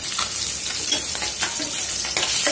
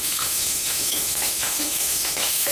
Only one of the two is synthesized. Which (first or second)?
second